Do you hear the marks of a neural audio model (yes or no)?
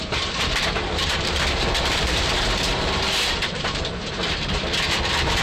yes